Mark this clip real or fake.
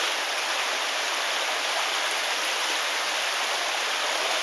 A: real